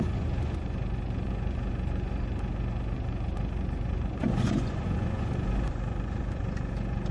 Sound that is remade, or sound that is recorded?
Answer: remade